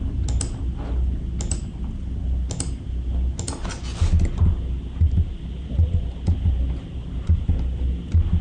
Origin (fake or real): real